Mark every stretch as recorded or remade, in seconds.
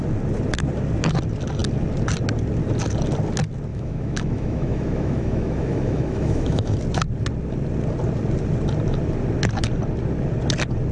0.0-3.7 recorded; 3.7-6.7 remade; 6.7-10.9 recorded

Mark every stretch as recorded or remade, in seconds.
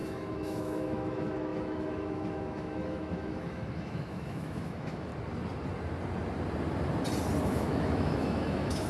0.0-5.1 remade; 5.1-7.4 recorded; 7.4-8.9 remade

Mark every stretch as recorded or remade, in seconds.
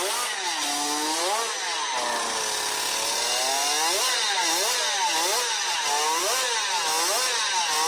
0.0-7.9 recorded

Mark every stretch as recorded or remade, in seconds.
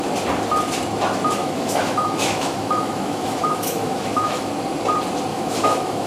0.0-1.4 recorded; 1.4-4.5 remade; 4.5-5.3 recorded; 5.3-6.1 remade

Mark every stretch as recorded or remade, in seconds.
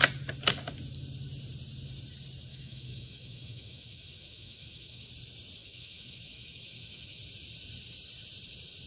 0.0-2.5 recorded; 2.5-5.1 remade; 5.1-5.6 recorded; 5.6-7.2 remade; 7.2-8.9 recorded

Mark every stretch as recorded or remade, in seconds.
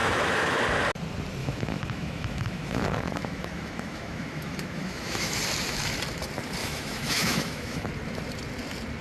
0.0-0.6 remade; 0.6-1.4 recorded; 1.4-5.4 remade; 5.4-6.6 recorded; 6.6-7.9 remade; 7.9-9.0 recorded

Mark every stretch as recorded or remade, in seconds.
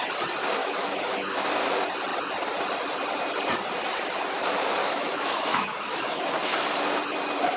0.0-0.6 recorded; 0.6-1.5 remade; 1.5-4.8 recorded; 4.8-6.3 remade; 6.3-7.6 recorded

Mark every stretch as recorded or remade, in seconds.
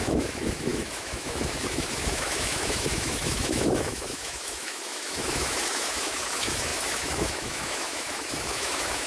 0.0-9.1 remade